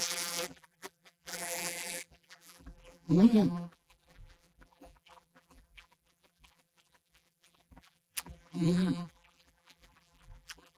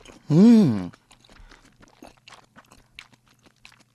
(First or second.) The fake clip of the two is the first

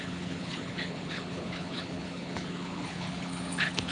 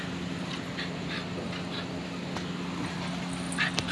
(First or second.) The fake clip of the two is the first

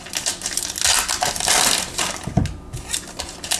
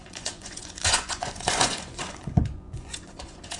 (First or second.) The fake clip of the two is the second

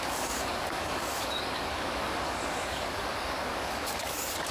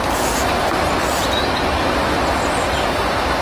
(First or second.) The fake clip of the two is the first